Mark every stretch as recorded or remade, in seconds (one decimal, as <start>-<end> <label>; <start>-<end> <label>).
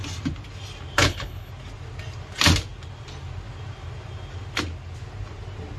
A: 0.0-1.0 recorded; 1.0-1.5 remade; 1.5-5.8 recorded